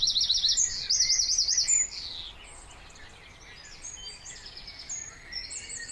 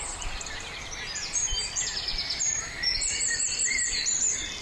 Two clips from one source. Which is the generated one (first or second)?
second